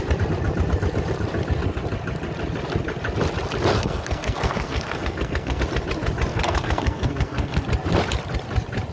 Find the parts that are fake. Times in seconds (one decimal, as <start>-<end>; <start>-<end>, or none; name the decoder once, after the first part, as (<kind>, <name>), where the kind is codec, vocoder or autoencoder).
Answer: 3.7-5.6 (codec, SNAC); 6.3-7.6